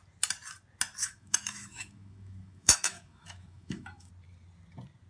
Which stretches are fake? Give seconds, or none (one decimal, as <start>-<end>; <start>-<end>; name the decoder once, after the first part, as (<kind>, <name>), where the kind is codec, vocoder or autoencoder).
1.0-4.1 (autoencoder, DAC-VAE)